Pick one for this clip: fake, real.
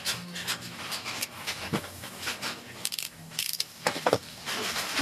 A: fake